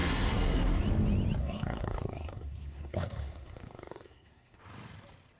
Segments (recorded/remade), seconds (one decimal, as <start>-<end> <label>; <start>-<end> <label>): 0.0-0.8 remade; 0.8-1.4 recorded; 1.4-4.6 remade; 4.6-5.4 recorded